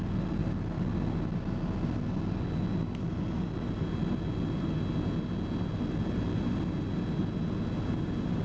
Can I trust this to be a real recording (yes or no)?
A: yes